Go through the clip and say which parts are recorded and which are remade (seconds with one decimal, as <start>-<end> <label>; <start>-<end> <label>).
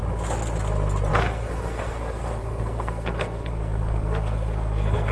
0.0-1.1 recorded; 1.1-5.1 remade